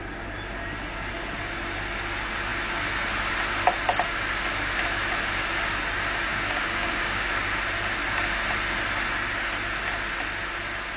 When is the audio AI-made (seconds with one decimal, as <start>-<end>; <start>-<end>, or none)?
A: 6.3-7.3